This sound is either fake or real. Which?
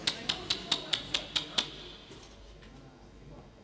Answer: real